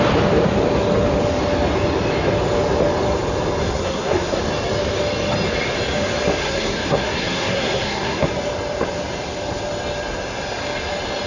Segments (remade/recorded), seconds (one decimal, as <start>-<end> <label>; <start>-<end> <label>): 0.0-3.6 recorded; 3.6-4.4 remade; 4.4-6.4 recorded; 6.4-8.3 remade; 8.3-11.3 recorded

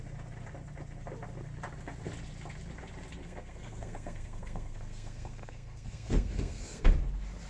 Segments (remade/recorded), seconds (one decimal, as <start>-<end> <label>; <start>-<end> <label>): 0.0-3.2 recorded; 3.2-6.9 remade; 6.9-7.5 recorded